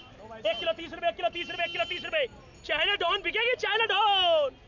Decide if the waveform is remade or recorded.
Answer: recorded